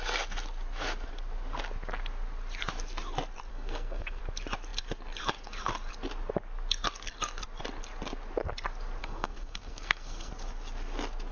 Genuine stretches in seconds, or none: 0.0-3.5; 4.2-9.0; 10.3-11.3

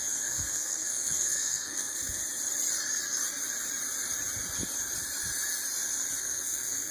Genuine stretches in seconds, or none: 2.2-6.2